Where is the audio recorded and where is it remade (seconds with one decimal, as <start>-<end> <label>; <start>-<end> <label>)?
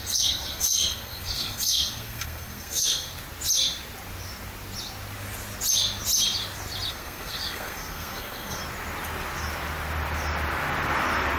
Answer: 0.0-3.1 remade; 3.1-6.9 recorded; 6.9-8.6 remade; 8.6-11.4 recorded